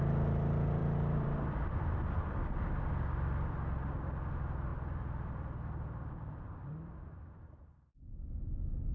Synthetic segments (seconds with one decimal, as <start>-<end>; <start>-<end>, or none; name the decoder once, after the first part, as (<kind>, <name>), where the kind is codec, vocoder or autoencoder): 0.8-2.9 (vocoder, BigVGAN v2); 4.7-7.9